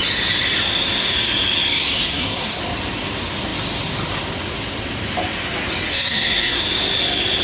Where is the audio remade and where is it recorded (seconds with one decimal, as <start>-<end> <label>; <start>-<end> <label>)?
0.0-1.8 recorded; 1.8-2.6 remade; 2.6-5.9 recorded; 5.9-6.6 remade; 6.6-7.4 recorded